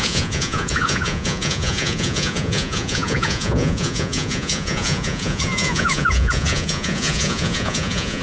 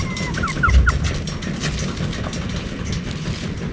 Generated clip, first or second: first